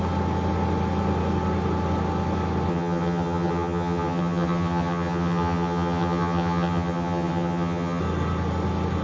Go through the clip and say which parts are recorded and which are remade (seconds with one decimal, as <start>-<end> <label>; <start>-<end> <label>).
0.0-2.7 recorded; 2.7-8.0 remade; 8.0-9.0 recorded